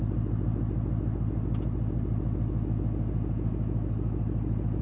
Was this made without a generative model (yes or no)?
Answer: yes